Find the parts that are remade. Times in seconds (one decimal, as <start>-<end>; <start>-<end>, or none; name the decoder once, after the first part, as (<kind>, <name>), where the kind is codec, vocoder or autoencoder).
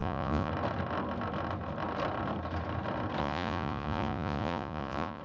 0.0-0.5 (vocoder, Vocos); 3.2-5.2